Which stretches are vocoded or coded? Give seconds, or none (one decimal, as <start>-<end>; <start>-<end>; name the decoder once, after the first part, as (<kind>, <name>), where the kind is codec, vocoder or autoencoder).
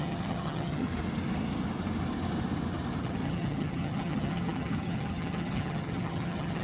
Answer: 0.0-0.9 (vocoder, HiFi-GAN); 3.0-6.6